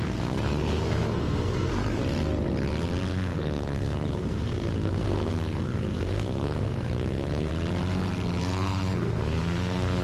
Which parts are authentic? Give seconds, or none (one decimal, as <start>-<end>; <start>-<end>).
2.0-3.1; 7.5-8.4